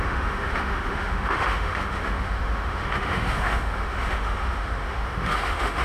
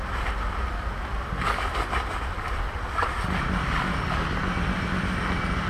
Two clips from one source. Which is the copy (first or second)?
first